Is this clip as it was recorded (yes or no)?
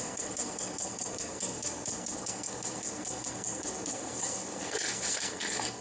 no